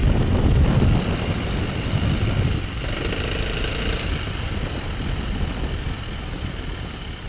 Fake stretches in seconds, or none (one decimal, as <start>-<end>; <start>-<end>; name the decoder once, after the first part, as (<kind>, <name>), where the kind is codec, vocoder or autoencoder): none

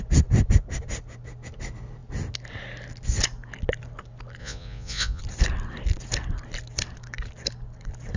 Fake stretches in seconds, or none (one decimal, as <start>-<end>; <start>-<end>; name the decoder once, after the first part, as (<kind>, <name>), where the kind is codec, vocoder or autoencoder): 4.4-5.2 (vocoder, Vocos)

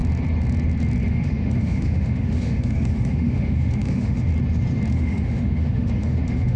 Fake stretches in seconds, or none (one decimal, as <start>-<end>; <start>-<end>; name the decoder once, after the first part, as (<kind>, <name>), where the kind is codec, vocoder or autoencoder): 1.1-4.3 (autoencoder, DAC-VAE); 4.9-6.6

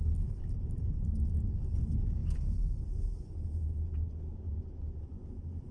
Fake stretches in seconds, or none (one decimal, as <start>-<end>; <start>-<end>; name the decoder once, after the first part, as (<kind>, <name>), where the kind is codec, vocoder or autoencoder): none

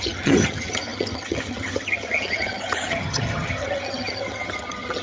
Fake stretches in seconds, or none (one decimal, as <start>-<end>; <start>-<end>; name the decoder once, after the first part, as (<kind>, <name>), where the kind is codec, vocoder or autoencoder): 0.0-5.0 (vocoder, HiFi-GAN)

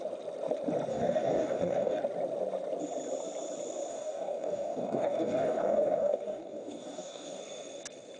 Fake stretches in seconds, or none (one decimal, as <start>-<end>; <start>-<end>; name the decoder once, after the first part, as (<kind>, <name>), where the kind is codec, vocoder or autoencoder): 0.9-2.0 (codec, DAC); 3.9-7.4

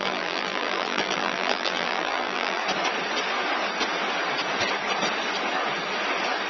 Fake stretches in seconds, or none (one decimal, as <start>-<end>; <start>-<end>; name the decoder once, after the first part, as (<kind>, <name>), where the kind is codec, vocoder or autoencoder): 0.0-2.6 (vocoder, BigVGAN v2)

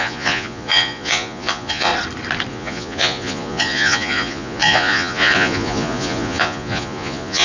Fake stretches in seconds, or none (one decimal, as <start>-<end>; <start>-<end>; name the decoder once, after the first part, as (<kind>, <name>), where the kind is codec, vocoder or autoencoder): 0.0-1.9 (vocoder, Vocos); 2.5-7.4